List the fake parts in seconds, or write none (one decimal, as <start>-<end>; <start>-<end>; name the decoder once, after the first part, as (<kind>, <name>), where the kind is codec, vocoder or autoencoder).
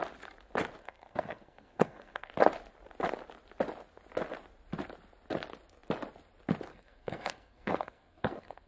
0.8-2.3 (codec, SNAC); 6.7-8.7